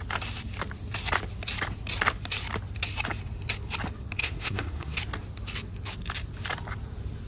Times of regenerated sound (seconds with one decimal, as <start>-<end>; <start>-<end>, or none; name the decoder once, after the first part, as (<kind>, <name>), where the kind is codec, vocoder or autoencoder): 4.2-5.0 (codec, SNAC)